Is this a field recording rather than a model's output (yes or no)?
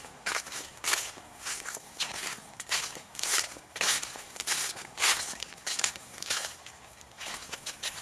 no